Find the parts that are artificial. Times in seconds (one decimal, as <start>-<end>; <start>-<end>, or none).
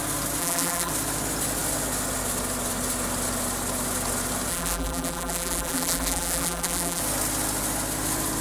0.4-0.9; 4.5-7.0